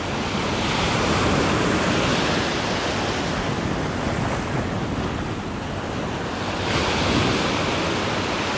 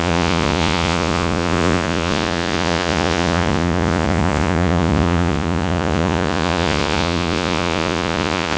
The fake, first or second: second